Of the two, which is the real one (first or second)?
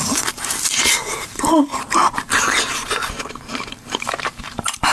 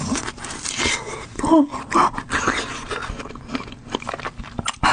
second